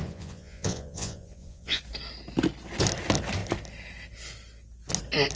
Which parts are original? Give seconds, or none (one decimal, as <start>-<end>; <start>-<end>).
1.8-5.4